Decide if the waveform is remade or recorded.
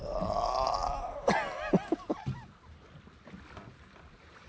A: recorded